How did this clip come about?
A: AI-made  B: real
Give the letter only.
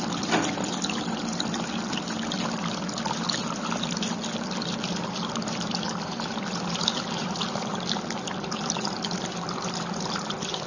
B